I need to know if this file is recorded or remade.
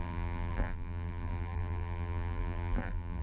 remade